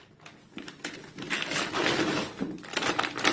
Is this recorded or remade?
recorded